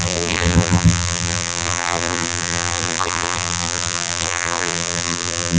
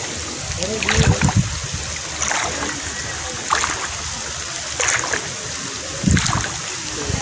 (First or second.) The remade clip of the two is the first